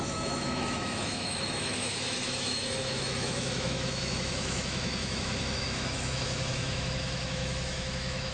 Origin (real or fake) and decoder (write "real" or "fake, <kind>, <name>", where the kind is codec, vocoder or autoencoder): fake, autoencoder, DAC-VAE